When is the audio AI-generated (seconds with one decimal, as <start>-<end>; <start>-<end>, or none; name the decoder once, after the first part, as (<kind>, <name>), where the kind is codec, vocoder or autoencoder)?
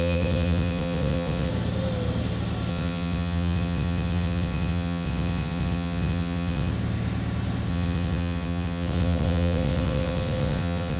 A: 0.0-1.5 (vocoder, WaveNeXt); 2.7-6.7; 7.7-11.0